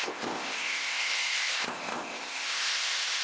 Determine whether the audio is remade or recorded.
remade